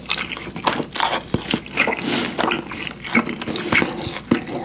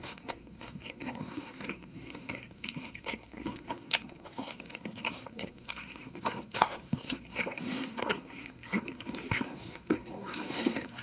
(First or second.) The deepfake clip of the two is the second